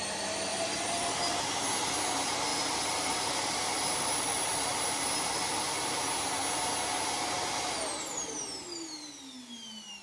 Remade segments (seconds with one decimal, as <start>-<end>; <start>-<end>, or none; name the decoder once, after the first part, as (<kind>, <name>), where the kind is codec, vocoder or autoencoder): 0.5-1.4 (vocoder, BigVGAN v2); 2.5-5.6